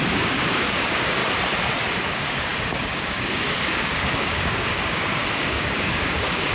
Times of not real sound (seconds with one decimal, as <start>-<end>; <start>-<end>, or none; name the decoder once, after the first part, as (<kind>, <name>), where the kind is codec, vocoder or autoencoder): 0.0-1.2 (codec, DAC); 2.0-6.5